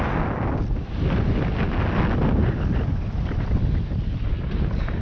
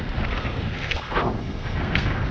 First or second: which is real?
first